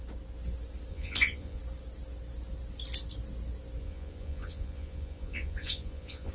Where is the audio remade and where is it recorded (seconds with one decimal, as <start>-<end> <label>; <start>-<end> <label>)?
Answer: 0.0-0.9 recorded; 0.9-1.6 remade; 1.6-3.8 recorded; 3.8-6.3 remade